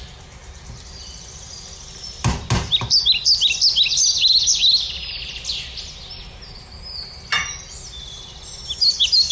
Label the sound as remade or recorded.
recorded